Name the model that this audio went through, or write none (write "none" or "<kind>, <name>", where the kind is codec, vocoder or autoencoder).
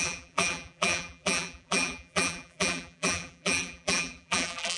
vocoder, BigVGAN v2